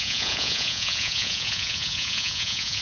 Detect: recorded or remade remade